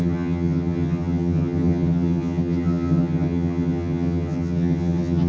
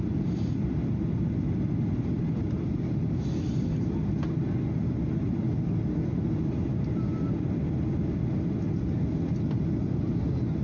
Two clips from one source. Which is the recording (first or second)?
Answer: second